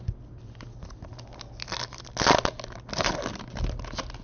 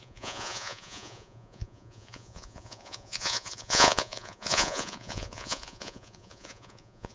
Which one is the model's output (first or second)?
second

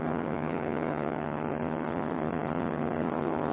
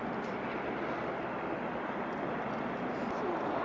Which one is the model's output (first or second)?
first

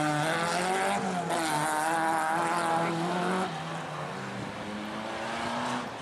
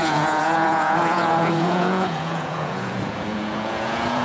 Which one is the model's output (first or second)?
second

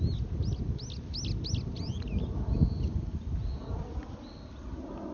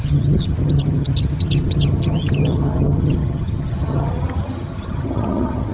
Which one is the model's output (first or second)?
second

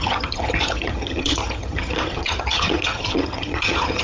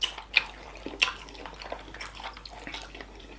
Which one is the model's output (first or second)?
first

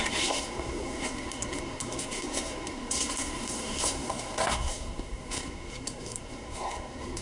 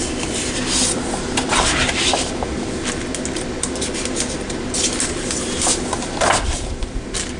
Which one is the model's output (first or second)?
first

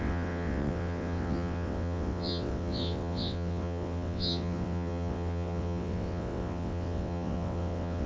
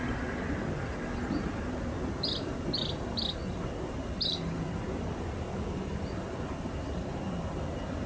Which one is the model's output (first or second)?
first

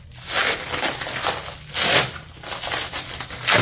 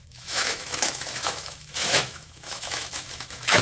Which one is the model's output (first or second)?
second